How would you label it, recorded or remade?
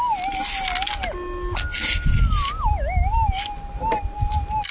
recorded